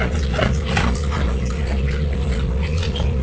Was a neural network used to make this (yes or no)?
yes